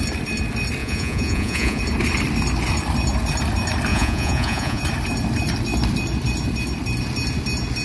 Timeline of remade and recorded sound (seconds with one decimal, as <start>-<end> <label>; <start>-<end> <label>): 0.0-0.8 recorded; 0.8-1.8 remade; 1.8-3.9 recorded; 3.9-4.8 remade; 4.8-7.8 recorded